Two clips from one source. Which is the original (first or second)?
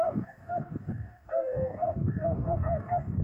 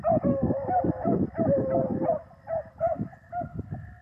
second